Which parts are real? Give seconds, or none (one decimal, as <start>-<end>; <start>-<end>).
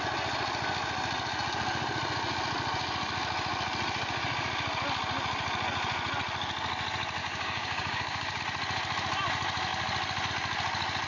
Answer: 0.0-7.2; 8.4-11.1